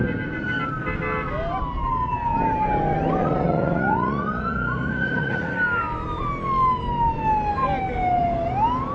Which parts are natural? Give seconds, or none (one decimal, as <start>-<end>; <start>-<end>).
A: 0.0-3.2; 5.5-8.9

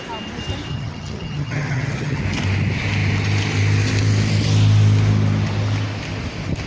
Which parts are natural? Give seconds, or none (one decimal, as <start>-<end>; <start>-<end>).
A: 0.0-0.7; 2.2-6.7

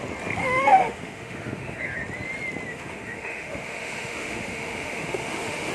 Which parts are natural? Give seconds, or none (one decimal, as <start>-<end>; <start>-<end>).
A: 0.0-0.4; 1.8-2.7

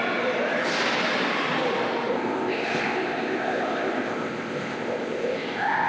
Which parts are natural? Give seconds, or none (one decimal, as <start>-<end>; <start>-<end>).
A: 0.0-2.1

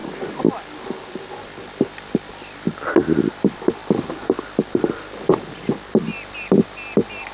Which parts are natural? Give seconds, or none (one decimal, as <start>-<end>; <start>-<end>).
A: 0.0-7.3